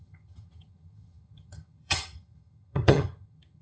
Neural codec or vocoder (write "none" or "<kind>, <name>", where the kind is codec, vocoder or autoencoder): vocoder, HiFi-GAN